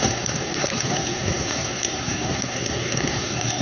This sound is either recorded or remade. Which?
remade